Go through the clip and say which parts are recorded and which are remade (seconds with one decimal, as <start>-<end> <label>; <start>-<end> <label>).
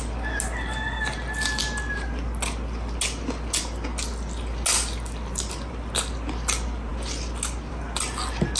0.0-8.6 recorded